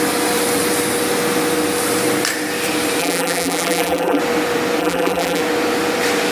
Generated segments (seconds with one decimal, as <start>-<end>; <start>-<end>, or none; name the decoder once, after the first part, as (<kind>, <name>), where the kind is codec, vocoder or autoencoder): 3.0-4.2 (vocoder, BigVGAN v2); 4.8-5.4